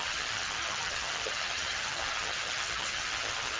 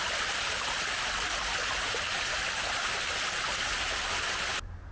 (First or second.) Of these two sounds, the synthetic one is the first